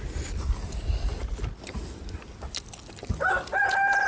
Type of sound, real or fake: real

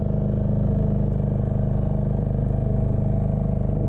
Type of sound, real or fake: real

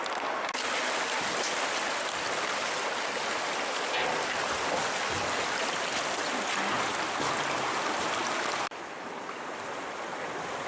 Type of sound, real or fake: real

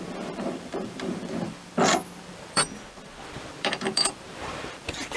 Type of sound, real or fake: fake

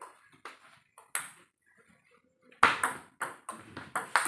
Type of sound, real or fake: real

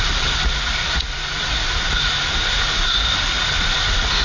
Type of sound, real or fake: real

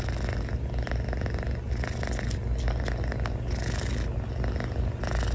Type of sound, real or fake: real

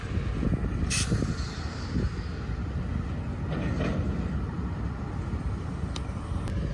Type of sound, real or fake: real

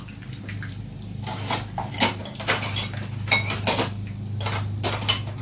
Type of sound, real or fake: real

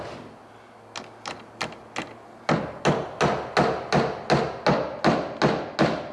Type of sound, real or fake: real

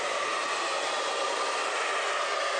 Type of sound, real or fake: real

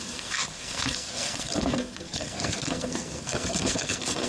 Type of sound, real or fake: fake